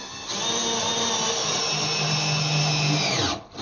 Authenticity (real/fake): real